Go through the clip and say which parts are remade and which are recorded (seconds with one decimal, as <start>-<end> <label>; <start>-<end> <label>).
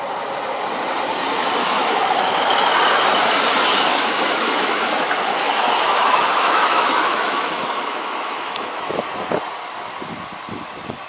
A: 0.0-1.6 recorded; 1.6-2.1 remade; 2.1-3.9 recorded; 3.9-9.0 remade; 9.0-11.1 recorded